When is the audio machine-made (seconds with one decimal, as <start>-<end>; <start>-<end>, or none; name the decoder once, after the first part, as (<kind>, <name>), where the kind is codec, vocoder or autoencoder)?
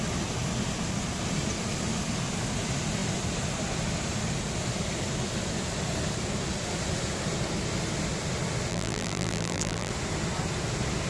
8.7-9.9 (vocoder, BigVGAN v2)